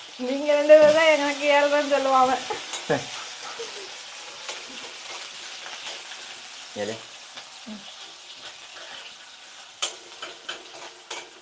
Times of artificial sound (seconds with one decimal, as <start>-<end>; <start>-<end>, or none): none